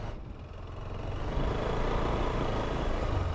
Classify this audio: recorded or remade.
recorded